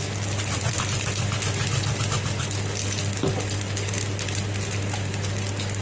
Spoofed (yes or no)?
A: no